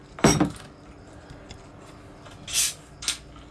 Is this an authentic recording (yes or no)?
yes